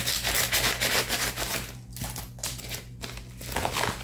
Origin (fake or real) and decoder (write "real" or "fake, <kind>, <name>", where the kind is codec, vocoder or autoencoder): real